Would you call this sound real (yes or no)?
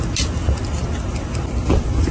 yes